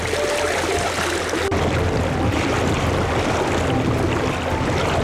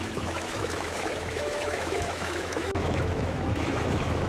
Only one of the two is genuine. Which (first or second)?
first